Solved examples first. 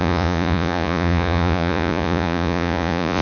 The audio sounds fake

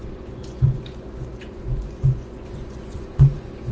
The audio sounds fake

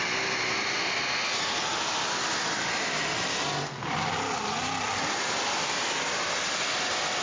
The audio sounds fake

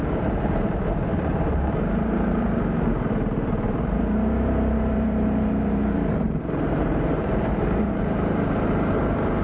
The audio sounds fake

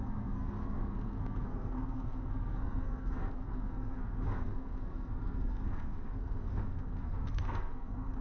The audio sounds fake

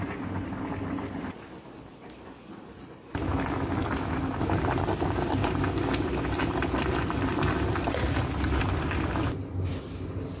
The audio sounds real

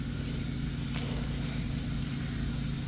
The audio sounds real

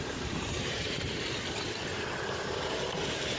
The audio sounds fake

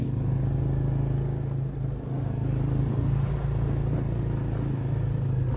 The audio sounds real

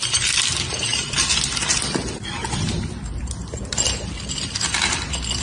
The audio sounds real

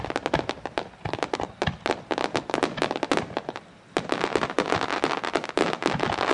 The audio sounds real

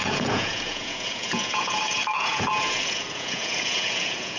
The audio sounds fake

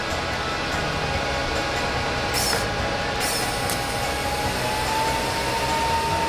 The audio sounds real